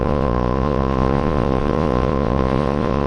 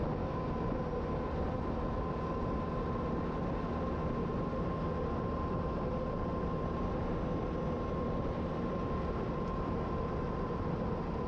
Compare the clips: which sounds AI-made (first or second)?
first